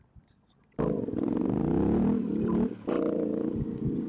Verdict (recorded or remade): recorded